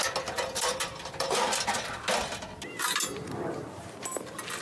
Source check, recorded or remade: recorded